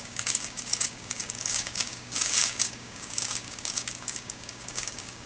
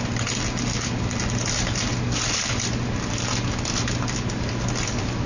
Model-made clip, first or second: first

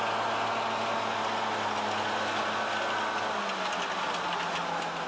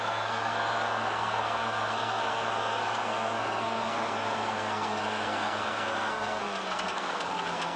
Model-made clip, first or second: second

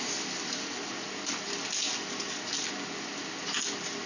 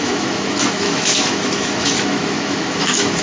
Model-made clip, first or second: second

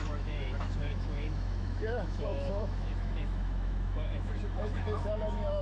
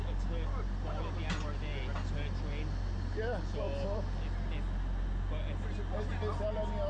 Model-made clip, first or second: first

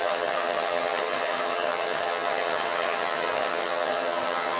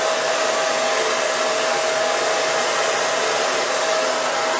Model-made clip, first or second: first